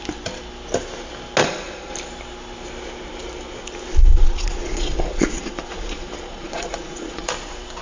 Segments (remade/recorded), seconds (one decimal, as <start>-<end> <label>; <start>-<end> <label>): 0.0-1.4 recorded; 1.4-1.9 remade; 1.9-4.1 recorded; 4.1-7.3 remade; 7.3-7.8 recorded